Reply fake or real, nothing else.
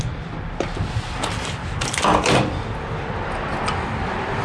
real